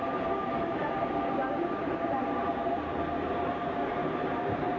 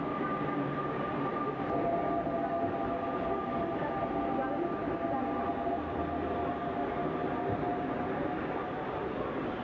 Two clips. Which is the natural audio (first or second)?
second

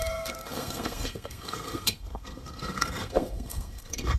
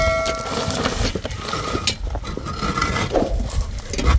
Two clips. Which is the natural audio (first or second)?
second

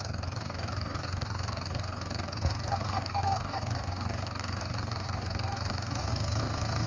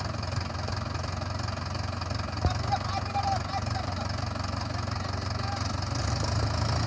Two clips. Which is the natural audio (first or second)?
second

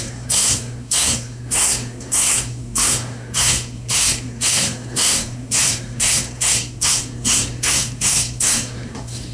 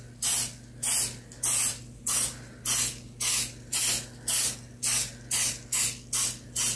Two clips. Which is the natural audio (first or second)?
second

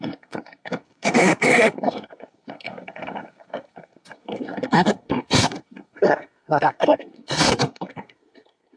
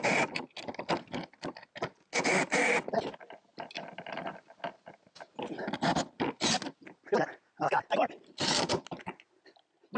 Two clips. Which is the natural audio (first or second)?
second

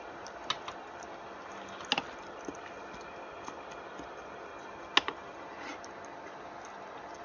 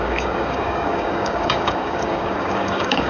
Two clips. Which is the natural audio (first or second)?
first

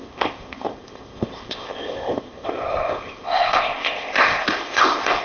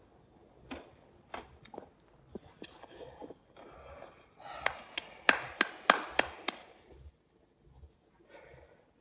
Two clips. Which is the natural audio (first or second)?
second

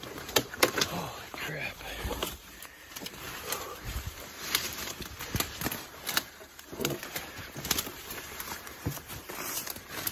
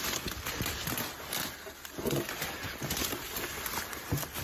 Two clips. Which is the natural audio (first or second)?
second